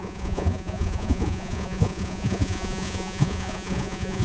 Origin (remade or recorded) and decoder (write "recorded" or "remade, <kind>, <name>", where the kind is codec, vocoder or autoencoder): remade, vocoder, Vocos